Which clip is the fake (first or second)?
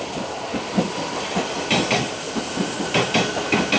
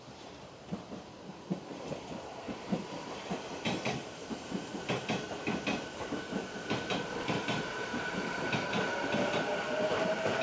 second